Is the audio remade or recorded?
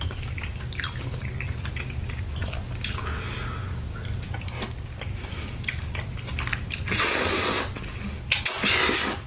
recorded